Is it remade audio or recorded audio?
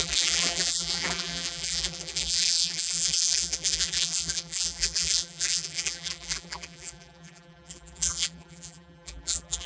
remade